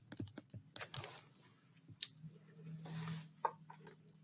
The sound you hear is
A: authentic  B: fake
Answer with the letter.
A